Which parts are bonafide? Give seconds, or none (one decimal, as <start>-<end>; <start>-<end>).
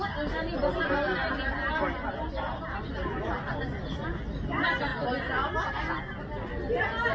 0.0-7.1